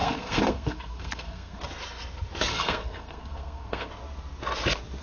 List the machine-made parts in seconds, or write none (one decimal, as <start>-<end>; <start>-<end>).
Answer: 0.0-1.6; 2.5-3.9